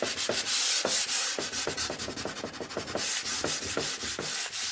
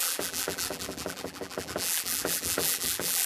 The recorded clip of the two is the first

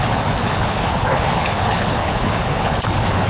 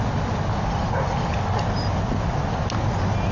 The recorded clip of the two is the second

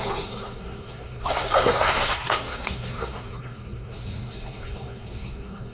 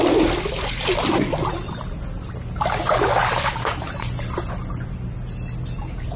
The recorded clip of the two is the second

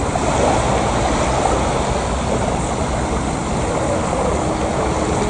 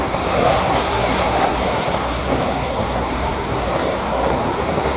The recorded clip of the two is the first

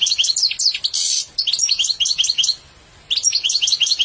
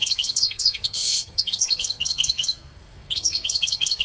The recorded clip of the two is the first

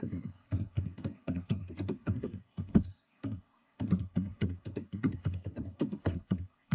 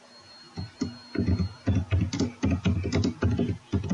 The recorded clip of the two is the second